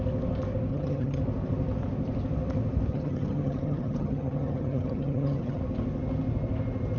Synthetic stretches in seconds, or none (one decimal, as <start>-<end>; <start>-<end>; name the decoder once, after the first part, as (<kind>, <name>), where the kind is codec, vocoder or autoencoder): 0.7-1.2 (vocoder, HiFi-GAN); 2.9-5.6